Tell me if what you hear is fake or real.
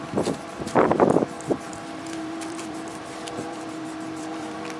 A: fake